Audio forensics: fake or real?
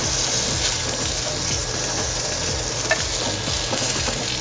real